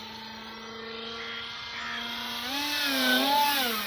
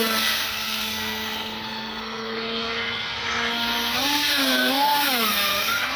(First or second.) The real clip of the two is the first